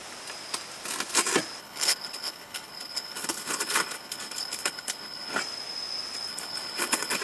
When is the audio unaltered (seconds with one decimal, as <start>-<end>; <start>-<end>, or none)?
0.0-1.6; 5.4-6.3